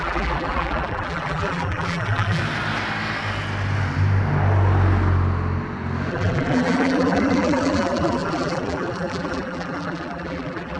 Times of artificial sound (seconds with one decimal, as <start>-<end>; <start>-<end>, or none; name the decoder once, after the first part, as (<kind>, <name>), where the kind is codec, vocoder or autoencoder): 0.0-2.4 (vocoder, BigVGAN v2); 6.1-10.8